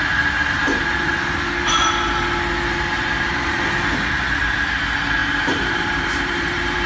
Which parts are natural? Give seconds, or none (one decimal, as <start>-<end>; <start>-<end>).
0.0-5.2